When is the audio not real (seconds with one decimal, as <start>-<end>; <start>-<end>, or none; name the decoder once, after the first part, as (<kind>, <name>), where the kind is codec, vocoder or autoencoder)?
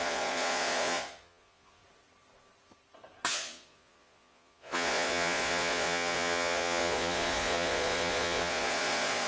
0.0-1.8 (vocoder, Vocos); 3.3-9.3